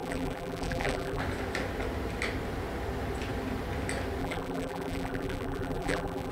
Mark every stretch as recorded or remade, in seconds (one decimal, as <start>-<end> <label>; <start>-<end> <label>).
0.0-1.2 remade; 1.2-4.2 recorded; 4.2-6.3 remade